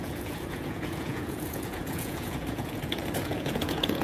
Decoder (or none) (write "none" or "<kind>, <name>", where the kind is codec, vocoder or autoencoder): vocoder, Vocos